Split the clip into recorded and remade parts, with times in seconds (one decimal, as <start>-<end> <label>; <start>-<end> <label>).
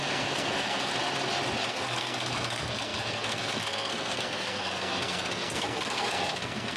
0.0-0.9 remade; 0.9-1.7 recorded; 1.7-6.8 remade